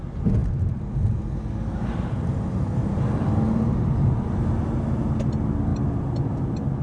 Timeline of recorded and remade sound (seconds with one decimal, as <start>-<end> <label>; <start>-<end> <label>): 0.0-6.8 recorded